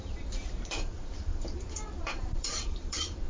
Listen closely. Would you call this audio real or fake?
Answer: fake